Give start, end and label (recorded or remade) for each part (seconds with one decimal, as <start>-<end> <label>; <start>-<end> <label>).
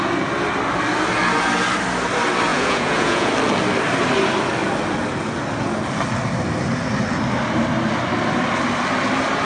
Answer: 0.0-2.5 recorded; 2.5-3.3 remade; 3.3-9.4 recorded